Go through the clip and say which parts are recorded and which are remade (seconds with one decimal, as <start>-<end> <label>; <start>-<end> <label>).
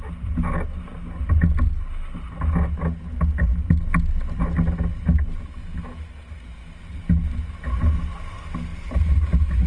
0.0-8.7 recorded; 8.7-9.7 remade